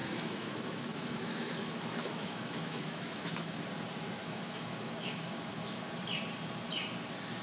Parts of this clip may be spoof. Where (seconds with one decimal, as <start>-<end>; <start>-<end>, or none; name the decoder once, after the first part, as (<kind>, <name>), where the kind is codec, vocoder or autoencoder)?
0.0-3.6 (autoencoder, DAC-VAE); 4.2-5.9